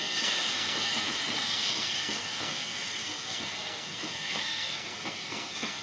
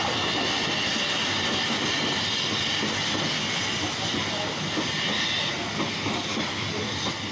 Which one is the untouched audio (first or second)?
second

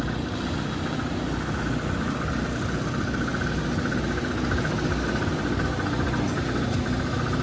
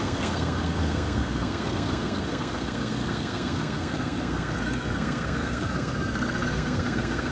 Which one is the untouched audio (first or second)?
first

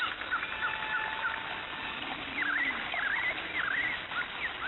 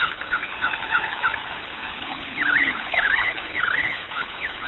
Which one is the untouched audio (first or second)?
first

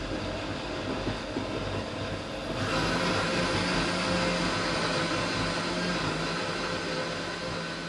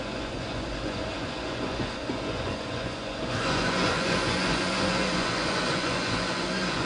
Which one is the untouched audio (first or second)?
first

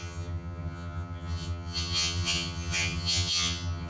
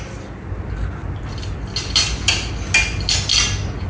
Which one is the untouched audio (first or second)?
second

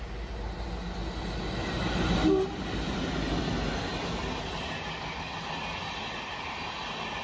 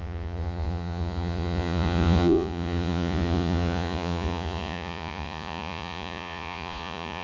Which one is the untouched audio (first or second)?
first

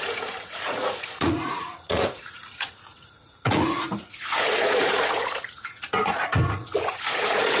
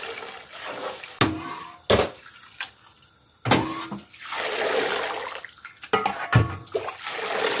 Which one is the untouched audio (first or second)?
second